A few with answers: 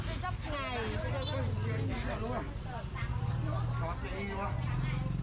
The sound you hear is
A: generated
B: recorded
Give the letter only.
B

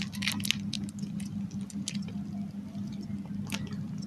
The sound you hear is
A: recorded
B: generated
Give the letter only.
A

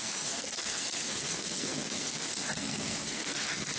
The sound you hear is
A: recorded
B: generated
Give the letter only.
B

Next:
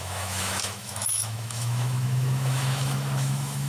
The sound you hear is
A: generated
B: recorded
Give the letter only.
A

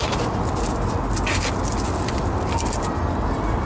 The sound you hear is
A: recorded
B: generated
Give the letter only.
A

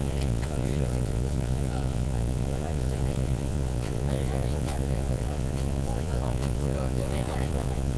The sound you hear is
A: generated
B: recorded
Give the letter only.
A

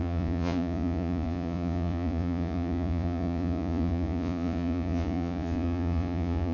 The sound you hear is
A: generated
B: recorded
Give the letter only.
A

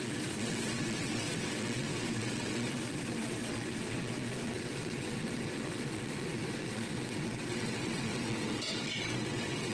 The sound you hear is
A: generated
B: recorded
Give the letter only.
A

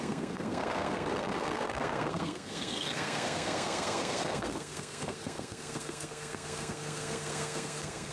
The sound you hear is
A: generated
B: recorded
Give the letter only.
A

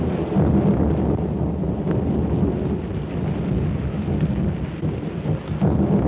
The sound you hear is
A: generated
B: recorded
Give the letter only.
B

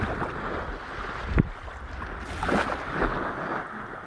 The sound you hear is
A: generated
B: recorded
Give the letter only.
B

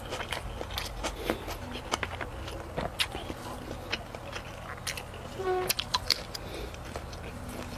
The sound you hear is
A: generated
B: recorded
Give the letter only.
B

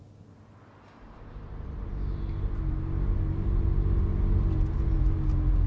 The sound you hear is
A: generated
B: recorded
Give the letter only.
B